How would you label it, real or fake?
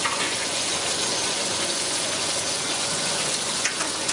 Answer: fake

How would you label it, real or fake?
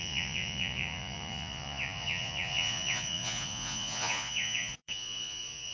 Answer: fake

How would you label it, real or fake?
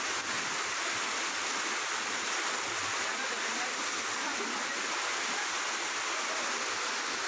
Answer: real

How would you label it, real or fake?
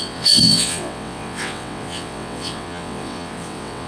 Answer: fake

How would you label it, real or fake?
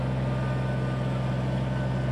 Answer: real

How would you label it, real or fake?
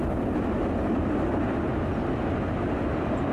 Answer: real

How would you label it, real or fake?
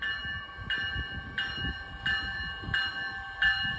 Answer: real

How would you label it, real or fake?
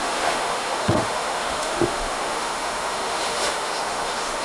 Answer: fake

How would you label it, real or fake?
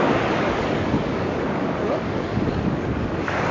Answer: fake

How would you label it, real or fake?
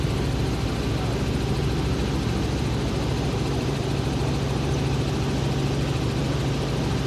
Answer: real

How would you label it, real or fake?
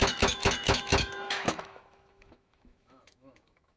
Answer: fake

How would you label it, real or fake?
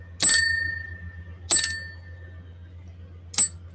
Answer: real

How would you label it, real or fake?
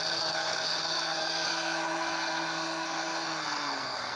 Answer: fake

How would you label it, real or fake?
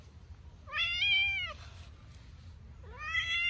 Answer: real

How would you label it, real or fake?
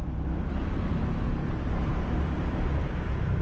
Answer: fake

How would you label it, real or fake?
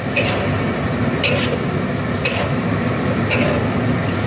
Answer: real